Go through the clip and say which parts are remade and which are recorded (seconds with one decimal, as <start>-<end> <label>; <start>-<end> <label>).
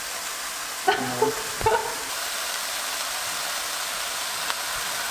0.0-1.8 recorded; 1.8-5.1 remade